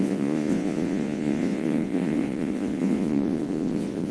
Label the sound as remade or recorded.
remade